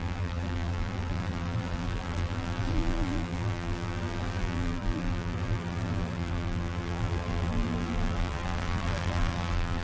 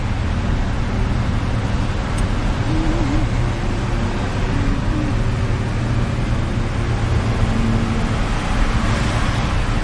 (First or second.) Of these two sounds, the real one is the second